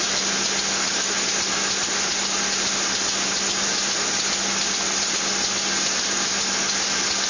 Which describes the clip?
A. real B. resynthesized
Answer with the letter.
A